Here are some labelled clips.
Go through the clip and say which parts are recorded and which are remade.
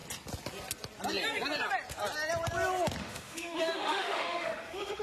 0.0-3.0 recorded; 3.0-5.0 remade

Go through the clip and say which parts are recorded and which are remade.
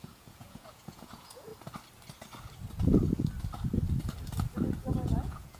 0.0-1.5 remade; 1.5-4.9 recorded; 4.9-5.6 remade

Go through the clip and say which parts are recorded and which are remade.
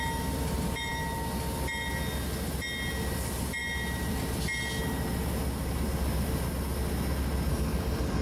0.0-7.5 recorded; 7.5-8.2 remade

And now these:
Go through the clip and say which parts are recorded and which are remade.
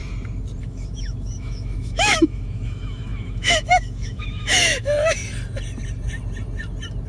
0.0-0.6 recorded; 0.6-5.2 remade; 5.2-7.1 recorded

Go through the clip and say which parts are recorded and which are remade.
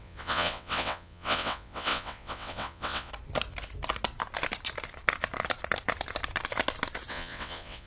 0.0-3.1 remade; 3.1-7.1 recorded; 7.1-7.9 remade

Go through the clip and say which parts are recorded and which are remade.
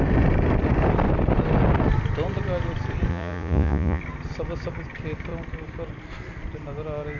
0.0-3.1 recorded; 3.1-4.0 remade; 4.0-7.2 recorded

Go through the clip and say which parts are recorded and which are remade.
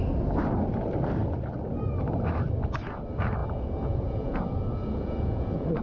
0.0-3.4 recorded; 3.4-5.8 remade